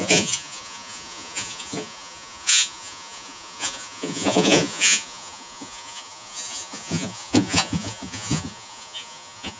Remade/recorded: remade